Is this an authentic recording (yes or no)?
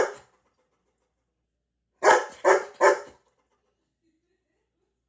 yes